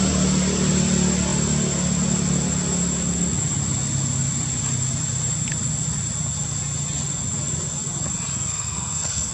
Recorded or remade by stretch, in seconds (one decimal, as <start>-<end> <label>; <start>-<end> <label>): 0.0-8.3 recorded; 8.3-9.3 remade